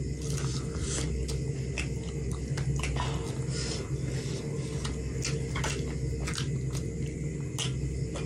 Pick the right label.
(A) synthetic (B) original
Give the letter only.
B